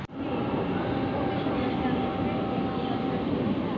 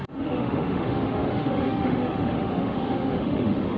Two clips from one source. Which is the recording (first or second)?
first